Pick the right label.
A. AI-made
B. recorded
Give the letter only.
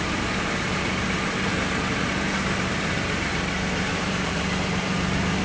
A